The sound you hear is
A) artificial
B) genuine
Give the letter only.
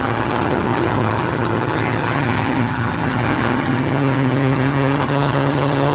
A